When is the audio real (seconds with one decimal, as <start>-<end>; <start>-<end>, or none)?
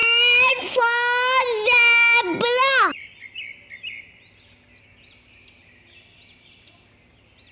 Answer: 0.5-7.5